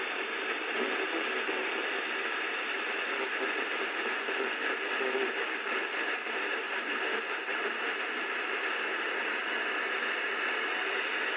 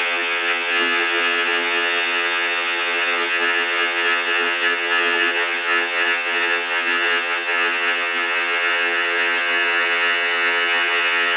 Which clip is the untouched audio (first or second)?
first